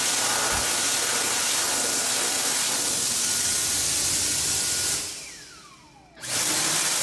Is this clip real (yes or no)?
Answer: yes